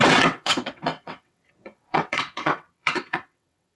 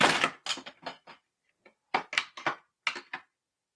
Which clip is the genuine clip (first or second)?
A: second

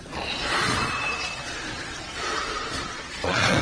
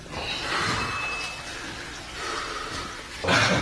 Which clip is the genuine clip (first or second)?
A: second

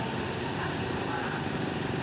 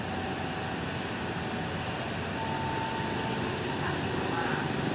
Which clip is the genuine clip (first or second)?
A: second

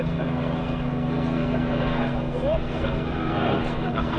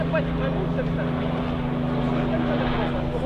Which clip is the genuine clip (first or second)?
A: second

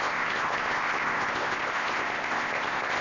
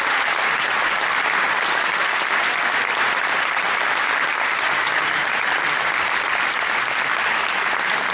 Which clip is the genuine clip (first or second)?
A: second